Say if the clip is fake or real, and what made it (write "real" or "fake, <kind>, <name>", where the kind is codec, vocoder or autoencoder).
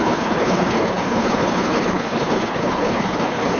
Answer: fake, codec, HILCodec